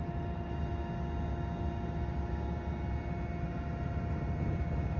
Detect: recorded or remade recorded